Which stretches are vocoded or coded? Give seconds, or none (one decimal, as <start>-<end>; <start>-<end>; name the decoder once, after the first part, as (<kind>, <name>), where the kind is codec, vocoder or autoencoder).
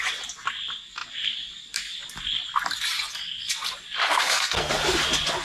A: 4.0-4.7 (codec, SNAC)